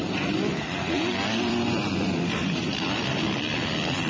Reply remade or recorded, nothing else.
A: remade